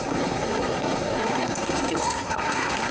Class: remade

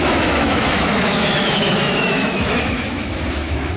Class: remade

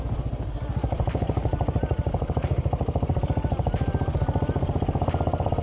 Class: recorded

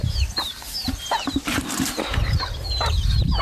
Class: remade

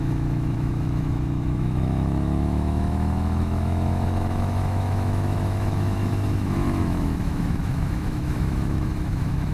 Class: remade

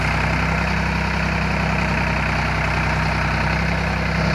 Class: recorded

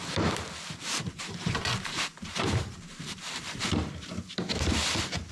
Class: remade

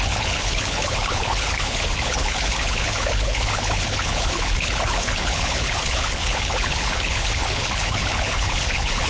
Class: remade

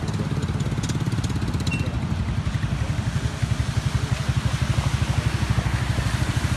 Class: recorded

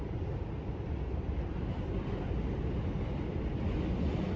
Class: recorded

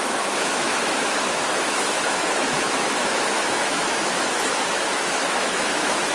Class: remade